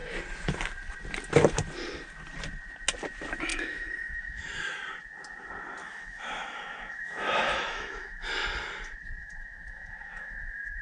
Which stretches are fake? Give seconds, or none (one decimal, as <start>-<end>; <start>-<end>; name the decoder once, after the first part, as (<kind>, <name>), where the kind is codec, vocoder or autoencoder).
3.5-4.8 (autoencoder, DAC-VAE); 5.8-8.3; 9.2-10.8